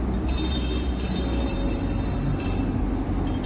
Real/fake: real